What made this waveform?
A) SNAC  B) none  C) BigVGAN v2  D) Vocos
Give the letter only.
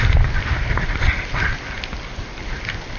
B